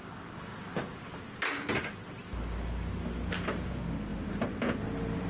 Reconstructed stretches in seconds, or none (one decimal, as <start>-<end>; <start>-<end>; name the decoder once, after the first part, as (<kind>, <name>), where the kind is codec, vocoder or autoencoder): 4.1-4.6 (vocoder, BigVGAN v2)